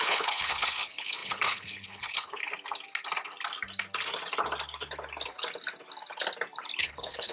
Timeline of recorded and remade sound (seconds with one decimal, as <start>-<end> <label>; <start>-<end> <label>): 0.0-2.4 remade; 2.4-6.8 recorded; 6.8-7.3 remade